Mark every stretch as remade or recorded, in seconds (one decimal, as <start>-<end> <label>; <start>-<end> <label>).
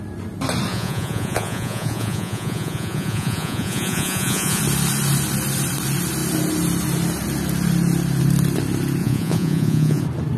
0.0-0.7 recorded; 0.7-4.6 remade; 4.6-9.0 recorded; 9.0-10.0 remade; 10.0-10.4 recorded